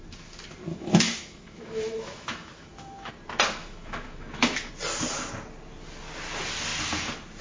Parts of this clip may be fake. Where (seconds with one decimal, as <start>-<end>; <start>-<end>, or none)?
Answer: 0.7-3.1; 3.6-4.7